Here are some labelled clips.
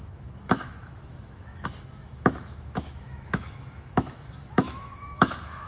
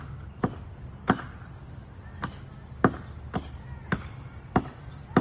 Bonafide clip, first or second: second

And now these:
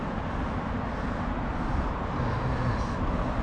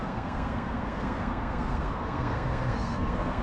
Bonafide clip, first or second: first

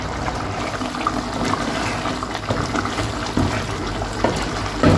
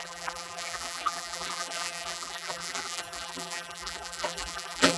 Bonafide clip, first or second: first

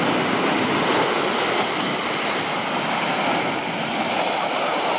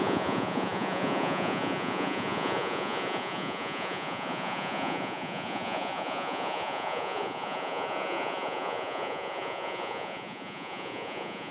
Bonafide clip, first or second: first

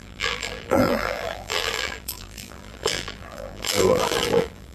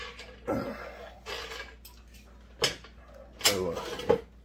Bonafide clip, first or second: second